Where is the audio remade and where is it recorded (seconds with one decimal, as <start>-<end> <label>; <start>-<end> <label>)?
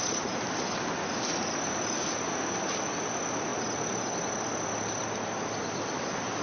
0.0-6.4 recorded